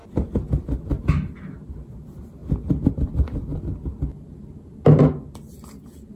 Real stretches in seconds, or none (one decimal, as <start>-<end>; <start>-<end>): 0.0-6.2